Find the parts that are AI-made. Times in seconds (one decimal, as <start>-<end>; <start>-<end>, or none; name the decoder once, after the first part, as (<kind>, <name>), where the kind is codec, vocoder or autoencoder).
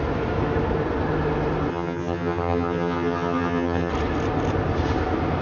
1.7-3.9 (vocoder, HiFi-GAN)